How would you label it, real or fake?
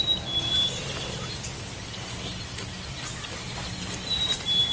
real